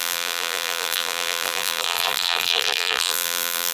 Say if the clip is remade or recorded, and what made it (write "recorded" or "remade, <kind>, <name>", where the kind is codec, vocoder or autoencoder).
remade, vocoder, BigVGAN v2